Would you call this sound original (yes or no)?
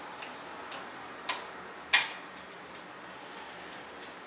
yes